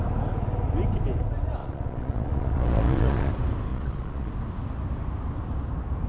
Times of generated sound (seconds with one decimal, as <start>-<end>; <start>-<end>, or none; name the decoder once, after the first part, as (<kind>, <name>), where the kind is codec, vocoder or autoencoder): 1.6-3.3 (vocoder, Vocos); 3.7-4.3